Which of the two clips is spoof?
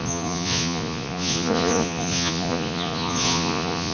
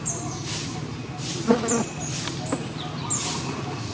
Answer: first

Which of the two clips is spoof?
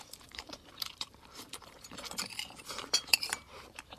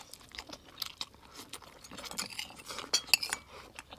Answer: first